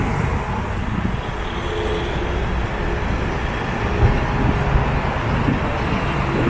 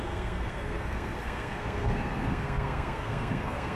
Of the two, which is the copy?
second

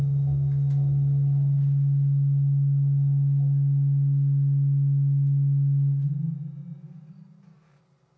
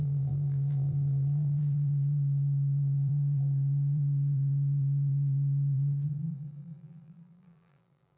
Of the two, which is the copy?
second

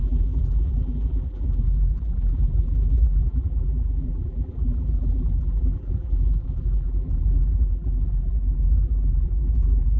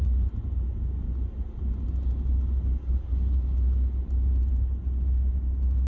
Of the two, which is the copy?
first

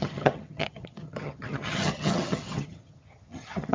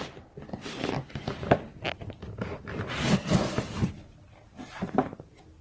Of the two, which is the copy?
first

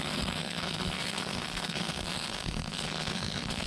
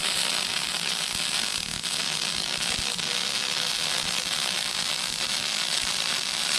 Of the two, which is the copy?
first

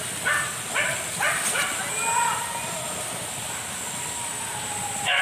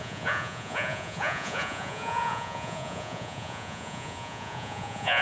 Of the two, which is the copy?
second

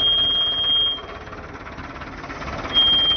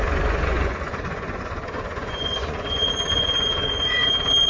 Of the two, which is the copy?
second